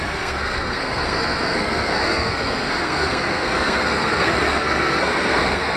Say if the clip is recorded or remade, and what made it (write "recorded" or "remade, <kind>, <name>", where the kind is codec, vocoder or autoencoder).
remade, codec, SNAC